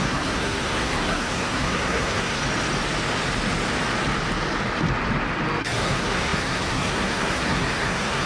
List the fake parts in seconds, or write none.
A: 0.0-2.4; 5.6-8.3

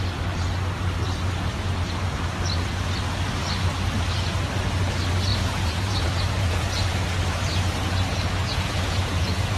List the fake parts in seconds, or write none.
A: 5.3-6.8; 8.5-9.6

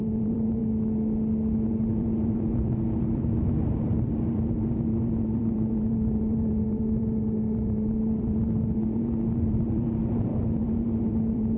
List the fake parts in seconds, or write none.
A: 0.0-0.6; 1.7-11.6

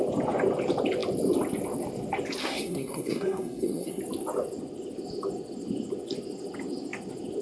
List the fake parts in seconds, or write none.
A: 2.4-4.0

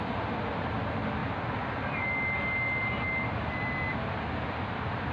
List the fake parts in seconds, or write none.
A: none